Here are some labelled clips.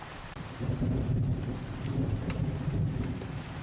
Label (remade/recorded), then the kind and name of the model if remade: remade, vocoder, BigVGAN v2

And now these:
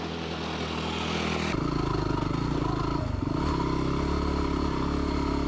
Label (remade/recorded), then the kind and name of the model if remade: recorded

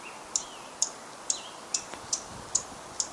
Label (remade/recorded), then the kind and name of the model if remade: recorded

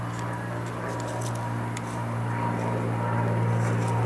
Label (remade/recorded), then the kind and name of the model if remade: recorded